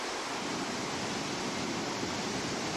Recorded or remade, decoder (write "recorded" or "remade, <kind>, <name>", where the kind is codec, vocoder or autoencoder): recorded